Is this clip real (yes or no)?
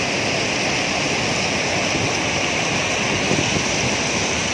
yes